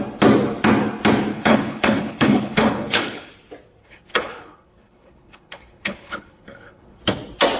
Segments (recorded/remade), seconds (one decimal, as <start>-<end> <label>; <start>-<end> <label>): 0.0-1.3 recorded; 1.3-3.3 remade; 3.3-3.8 recorded; 3.8-7.0 remade; 7.0-7.6 recorded